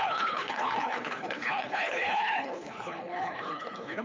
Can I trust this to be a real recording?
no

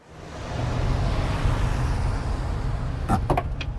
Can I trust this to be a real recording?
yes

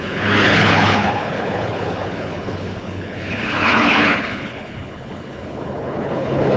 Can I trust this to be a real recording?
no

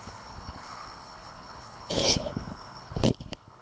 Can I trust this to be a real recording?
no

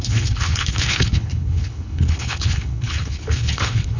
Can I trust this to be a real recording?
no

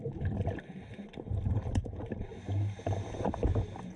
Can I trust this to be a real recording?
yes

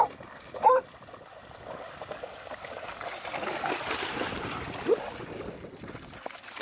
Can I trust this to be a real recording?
yes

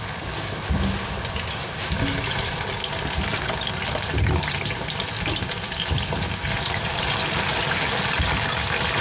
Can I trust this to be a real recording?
yes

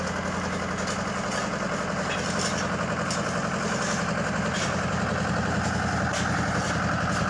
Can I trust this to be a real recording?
yes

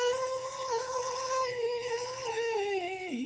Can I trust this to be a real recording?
no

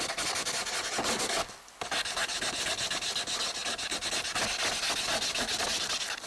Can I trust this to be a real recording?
yes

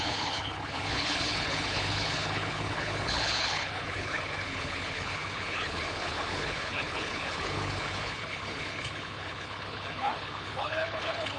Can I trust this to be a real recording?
no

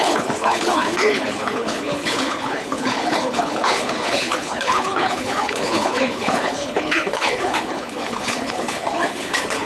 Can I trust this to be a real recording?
no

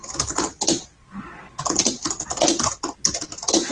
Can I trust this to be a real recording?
yes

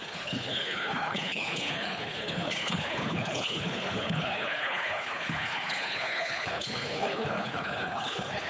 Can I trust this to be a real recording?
no